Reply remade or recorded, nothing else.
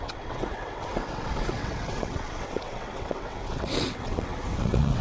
remade